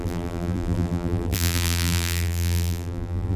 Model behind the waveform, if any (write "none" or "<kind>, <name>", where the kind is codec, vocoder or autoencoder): vocoder, BigVGAN v2